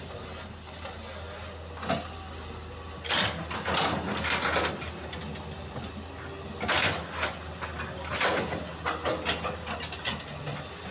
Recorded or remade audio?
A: recorded